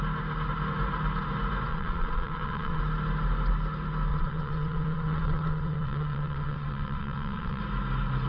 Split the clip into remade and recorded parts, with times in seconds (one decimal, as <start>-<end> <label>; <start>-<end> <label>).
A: 0.0-1.7 recorded; 1.7-2.8 remade; 2.8-4.1 recorded; 4.1-7.6 remade; 7.6-8.3 recorded